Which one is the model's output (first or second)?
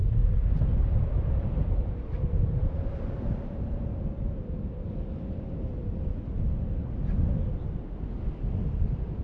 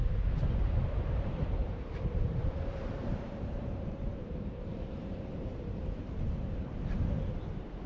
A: second